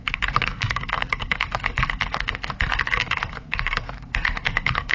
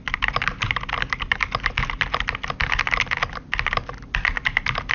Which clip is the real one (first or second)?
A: second